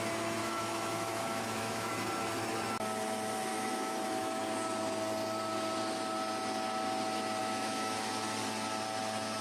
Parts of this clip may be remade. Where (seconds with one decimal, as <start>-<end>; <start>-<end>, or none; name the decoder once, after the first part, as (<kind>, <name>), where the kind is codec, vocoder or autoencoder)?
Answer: 0.4-1.9 (autoencoder, DAC-VAE); 3.5-4.4; 7.4-8.1

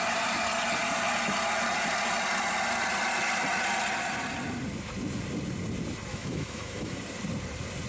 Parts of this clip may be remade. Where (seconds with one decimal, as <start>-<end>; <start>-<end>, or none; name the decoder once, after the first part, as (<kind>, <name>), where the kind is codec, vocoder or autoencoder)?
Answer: 6.1-7.0 (autoencoder, DAC-VAE)

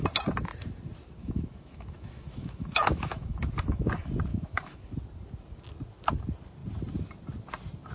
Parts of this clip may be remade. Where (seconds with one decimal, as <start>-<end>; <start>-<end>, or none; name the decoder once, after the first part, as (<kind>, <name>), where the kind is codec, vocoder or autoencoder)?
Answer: 1.2-3.8 (autoencoder, DAC-VAE); 4.3-4.9

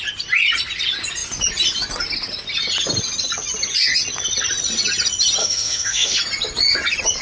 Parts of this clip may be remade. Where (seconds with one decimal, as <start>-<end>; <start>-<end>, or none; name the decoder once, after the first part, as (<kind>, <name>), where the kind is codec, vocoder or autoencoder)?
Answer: 5.4-6.2 (autoencoder, DAC-VAE)

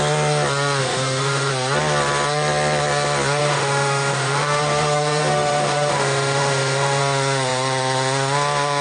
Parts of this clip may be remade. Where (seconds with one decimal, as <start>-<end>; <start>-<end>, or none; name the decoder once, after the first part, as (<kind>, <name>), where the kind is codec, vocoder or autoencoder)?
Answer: 0.8-1.5 (autoencoder, DAC-VAE); 3.4-7.0